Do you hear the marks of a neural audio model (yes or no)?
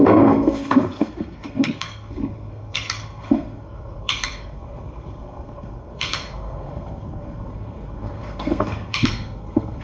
yes